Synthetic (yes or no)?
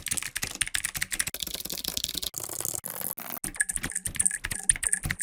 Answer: no